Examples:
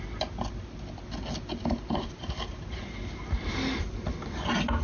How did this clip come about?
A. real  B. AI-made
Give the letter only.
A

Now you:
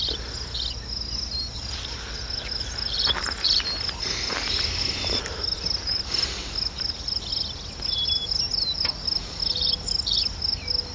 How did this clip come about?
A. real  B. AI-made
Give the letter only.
A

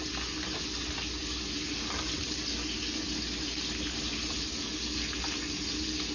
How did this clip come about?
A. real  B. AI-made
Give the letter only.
A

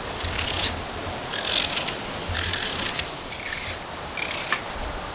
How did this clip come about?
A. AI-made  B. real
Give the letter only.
B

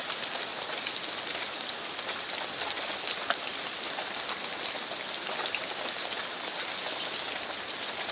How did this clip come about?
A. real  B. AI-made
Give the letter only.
A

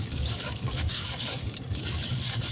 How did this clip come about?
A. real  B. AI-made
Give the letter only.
B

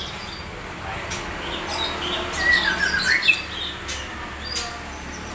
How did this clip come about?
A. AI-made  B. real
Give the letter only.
B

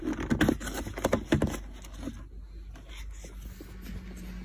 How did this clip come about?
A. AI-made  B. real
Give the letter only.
B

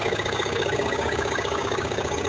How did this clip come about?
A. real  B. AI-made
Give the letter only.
B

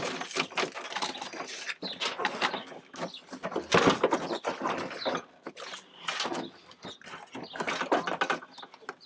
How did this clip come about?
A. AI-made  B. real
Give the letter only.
B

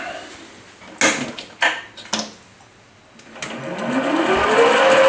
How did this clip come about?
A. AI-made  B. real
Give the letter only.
B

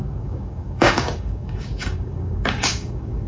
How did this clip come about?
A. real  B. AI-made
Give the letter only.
B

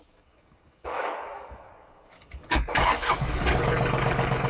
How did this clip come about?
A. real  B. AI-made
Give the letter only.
B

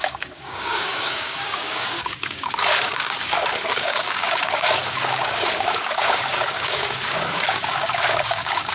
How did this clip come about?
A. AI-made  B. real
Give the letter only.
A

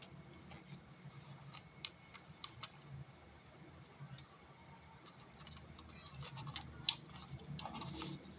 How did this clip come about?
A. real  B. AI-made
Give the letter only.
A